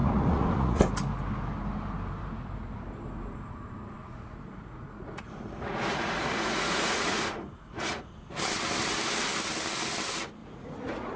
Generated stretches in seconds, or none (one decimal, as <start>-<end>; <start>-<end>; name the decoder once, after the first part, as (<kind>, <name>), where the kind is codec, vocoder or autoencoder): 0.0-0.8 (vocoder, Vocos); 4.0-8.1; 10.4-11.2